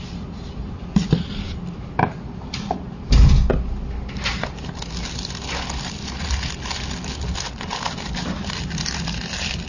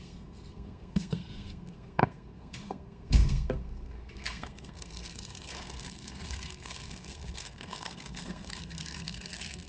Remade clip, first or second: second